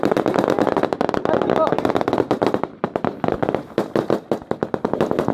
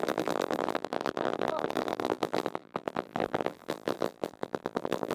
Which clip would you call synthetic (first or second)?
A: second